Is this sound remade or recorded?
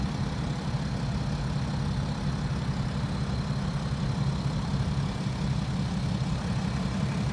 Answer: recorded